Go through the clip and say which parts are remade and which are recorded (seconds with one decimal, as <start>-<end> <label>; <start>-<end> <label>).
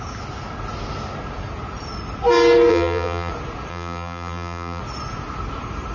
0.0-2.7 recorded; 2.7-3.3 remade; 3.3-3.7 recorded; 3.7-4.8 remade; 4.8-5.9 recorded